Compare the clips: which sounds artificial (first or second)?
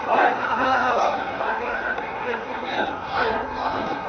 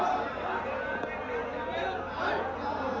first